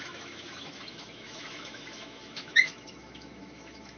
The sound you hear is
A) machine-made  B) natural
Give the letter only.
A